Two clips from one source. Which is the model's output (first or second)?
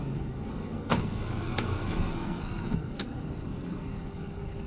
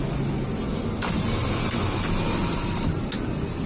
first